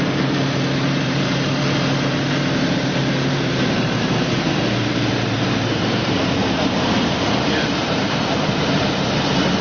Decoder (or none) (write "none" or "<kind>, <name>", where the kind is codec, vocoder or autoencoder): vocoder, BigVGAN v2